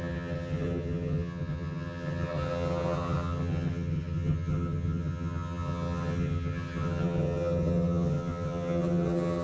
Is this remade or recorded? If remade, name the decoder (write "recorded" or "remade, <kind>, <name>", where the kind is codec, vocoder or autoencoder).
remade, vocoder, HiFi-GAN